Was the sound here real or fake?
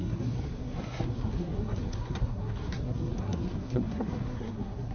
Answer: fake